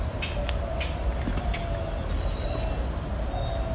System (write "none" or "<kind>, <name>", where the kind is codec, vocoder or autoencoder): none